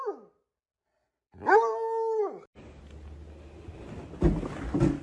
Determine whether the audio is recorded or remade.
recorded